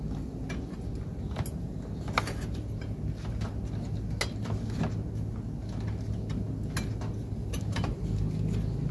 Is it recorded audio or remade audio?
recorded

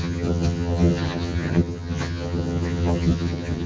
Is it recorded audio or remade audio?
remade